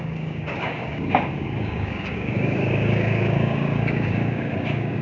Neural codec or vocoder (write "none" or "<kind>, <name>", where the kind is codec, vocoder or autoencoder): codec, DAC